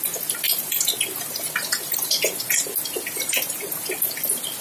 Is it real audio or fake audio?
real